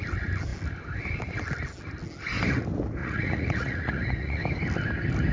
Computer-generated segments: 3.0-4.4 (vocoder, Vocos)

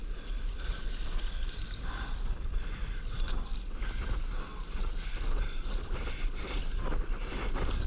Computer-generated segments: 0.5-4.5 (vocoder, BigVGAN v2); 5.6-7.9

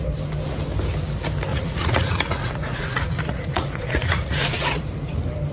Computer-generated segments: 1.5-4.8 (vocoder, Vocos)

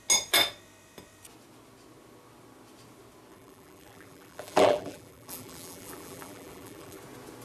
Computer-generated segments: 3.3-7.0 (vocoder, BigVGAN v2)

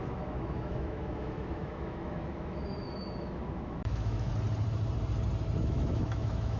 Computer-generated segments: 0.0-4.3 (autoencoder, DAC-VAE); 5.6-6.6

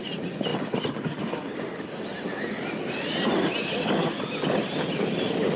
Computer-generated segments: none

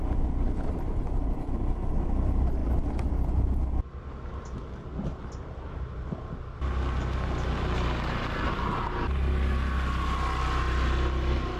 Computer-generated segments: none